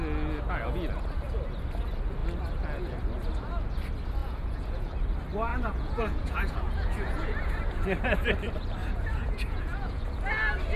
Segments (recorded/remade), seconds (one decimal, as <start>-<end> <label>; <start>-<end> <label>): 0.0-4.2 recorded; 4.2-4.9 remade; 4.9-5.5 recorded; 5.5-7.5 remade; 7.5-8.8 recorded; 8.8-10.1 remade; 10.1-10.8 recorded